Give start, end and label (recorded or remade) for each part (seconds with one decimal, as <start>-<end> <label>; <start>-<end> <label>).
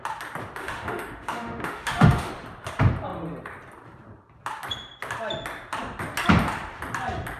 0.0-0.6 recorded; 0.6-2.3 remade; 2.3-7.4 recorded